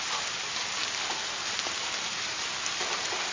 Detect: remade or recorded recorded